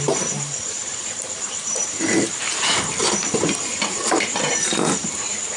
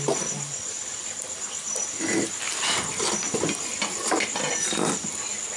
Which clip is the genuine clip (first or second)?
second